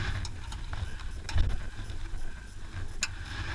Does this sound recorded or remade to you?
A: recorded